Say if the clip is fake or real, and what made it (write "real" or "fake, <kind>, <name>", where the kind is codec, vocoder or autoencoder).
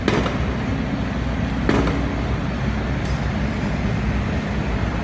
real